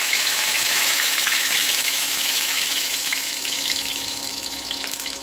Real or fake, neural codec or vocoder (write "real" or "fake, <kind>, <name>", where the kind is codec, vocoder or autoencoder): fake, autoencoder, DAC-VAE